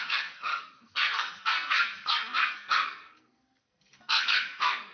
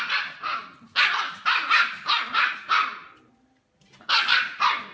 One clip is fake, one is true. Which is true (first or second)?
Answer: second